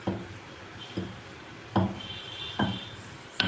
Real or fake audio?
fake